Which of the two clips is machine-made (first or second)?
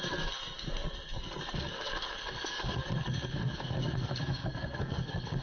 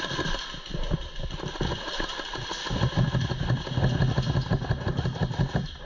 first